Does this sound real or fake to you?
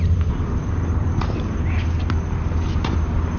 real